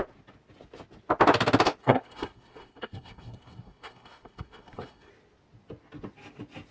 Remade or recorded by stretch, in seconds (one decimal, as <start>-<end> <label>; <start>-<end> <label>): 0.0-1.8 recorded; 1.8-5.1 remade; 5.1-6.7 recorded